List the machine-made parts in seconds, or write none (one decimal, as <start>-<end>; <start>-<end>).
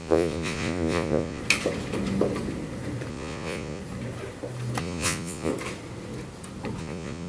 0.0-1.4; 3.1-3.8; 4.8-5.5; 6.8-7.3